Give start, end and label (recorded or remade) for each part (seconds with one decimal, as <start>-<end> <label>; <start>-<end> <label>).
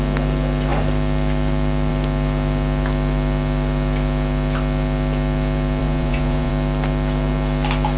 0.0-5.8 recorded; 5.8-6.5 remade; 6.5-8.0 recorded